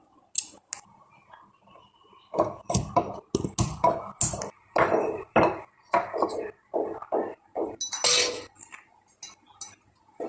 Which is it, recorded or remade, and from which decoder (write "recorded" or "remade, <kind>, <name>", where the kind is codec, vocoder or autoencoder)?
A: recorded